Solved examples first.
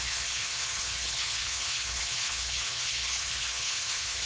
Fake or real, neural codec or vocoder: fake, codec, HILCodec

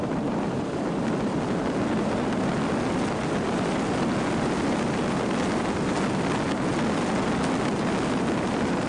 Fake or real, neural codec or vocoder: real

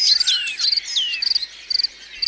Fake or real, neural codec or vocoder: real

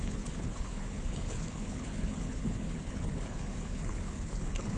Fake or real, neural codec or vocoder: fake, codec, HILCodec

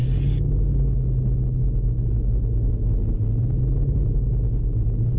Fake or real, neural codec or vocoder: real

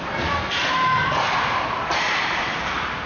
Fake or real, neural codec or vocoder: real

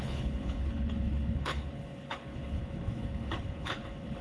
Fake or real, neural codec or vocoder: fake, codec, HILCodec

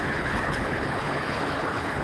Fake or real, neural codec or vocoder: fake, codec, HILCodec